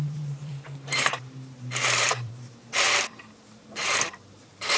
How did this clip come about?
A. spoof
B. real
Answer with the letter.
A